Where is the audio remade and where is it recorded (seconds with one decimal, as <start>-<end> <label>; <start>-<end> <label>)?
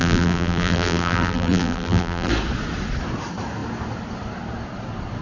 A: 0.0-2.3 remade; 2.3-5.2 recorded